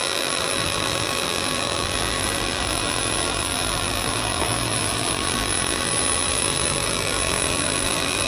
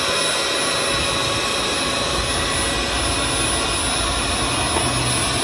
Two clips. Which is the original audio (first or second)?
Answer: second